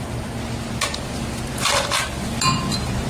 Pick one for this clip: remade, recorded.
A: recorded